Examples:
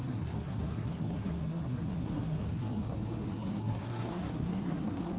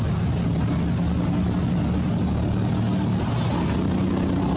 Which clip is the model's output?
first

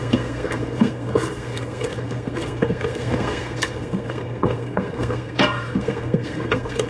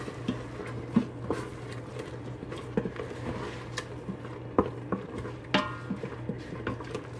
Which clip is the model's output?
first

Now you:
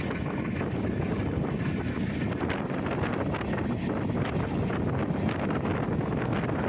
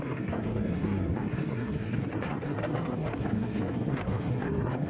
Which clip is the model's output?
second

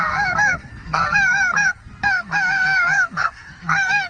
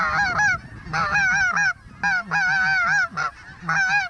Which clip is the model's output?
first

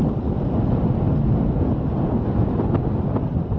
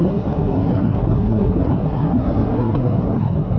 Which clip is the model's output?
second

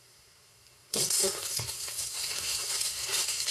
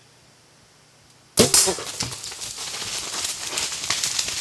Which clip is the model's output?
first